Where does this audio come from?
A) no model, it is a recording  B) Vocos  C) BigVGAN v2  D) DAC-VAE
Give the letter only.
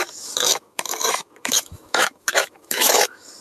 D